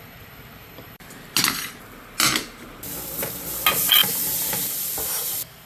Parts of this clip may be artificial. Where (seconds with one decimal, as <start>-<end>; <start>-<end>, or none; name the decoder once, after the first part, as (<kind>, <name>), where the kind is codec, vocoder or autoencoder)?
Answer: 4.0-5.7 (vocoder, BigVGAN v2)